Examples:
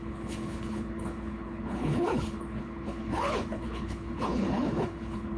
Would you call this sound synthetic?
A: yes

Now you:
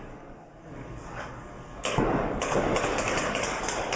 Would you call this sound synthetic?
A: yes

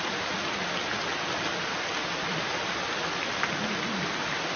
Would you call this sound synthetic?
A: no